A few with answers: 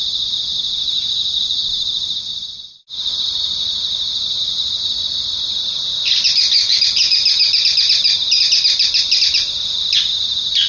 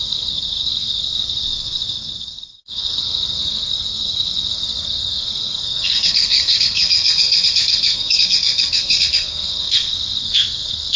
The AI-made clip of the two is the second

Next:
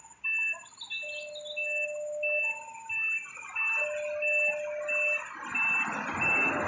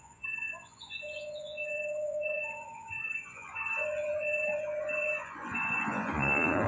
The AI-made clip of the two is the second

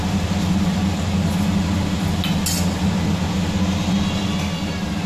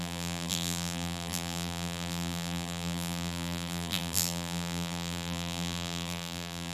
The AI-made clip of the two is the second